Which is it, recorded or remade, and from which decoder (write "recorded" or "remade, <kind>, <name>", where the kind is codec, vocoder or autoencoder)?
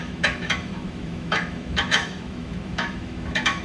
remade, autoencoder, DAC-VAE